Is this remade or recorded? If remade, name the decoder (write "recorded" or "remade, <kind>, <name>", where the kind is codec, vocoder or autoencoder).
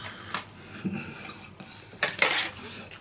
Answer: recorded